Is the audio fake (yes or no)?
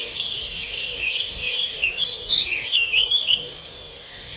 yes